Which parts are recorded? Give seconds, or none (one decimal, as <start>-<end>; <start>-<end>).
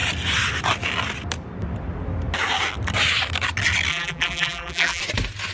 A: 0.0-3.9; 5.0-5.5